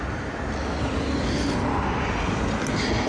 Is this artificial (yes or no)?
no